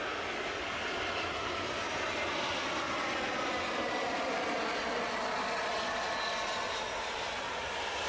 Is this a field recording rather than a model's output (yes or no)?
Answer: yes